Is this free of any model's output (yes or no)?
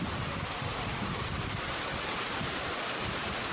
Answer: yes